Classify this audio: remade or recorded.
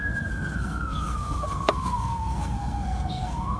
remade